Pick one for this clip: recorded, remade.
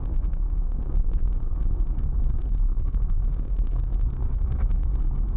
remade